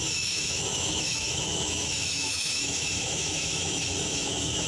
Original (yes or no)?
no